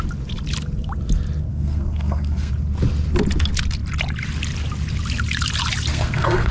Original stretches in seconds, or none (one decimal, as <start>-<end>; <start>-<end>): 0.0-1.5; 2.5-5.9